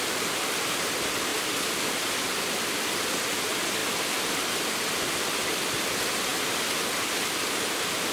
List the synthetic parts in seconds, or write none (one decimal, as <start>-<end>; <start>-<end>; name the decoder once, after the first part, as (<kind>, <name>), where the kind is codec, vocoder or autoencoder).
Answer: none

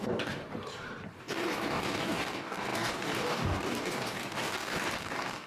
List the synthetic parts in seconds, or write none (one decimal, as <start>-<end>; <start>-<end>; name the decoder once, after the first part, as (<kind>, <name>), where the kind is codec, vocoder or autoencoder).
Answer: 0.0-0.4 (codec, DAC); 1.2-5.5